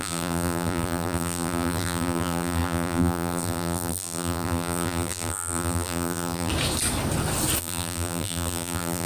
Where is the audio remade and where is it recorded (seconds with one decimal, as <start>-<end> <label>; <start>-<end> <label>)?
0.0-6.5 remade; 6.5-7.6 recorded; 7.6-9.1 remade